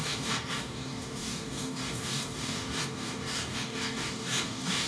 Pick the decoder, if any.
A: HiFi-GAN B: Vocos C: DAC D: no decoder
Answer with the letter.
C